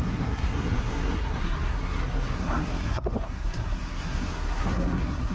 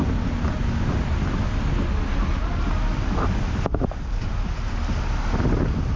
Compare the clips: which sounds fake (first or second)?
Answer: first